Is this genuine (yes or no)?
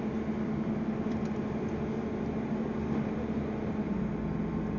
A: yes